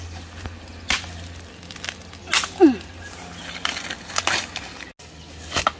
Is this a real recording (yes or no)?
yes